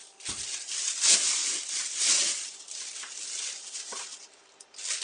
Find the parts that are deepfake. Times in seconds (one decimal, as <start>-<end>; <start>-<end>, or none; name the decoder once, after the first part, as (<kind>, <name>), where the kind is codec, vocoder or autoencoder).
0.0-0.8 (vocoder, BigVGAN v2)